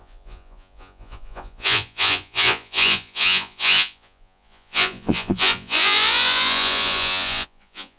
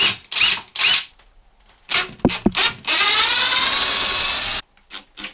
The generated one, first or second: first